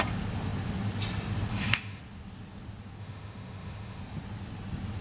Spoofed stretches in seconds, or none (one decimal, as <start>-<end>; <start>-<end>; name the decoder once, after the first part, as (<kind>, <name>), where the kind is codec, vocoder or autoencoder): 1.5-2.0 (autoencoder, DAC-VAE); 3.0-4.0

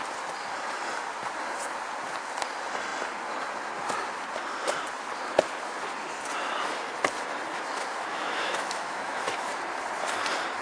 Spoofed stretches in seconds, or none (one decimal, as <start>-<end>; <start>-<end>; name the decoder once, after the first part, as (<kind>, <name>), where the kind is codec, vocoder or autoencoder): 8.1-9.5 (autoencoder, DAC-VAE)

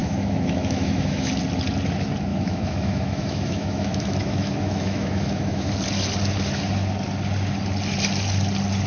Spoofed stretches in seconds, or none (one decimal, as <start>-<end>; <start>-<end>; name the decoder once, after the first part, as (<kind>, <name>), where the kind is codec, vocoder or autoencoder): 0.0-1.3 (autoencoder, DAC-VAE); 2.3-5.7

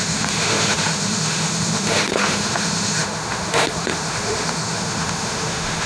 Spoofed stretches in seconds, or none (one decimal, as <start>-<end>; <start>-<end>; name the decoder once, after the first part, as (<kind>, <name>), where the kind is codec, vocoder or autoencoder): 0.0-5.9 (autoencoder, DAC-VAE)

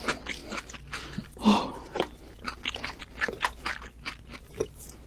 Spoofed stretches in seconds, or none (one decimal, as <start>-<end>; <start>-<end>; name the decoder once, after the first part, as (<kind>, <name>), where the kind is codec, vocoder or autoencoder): none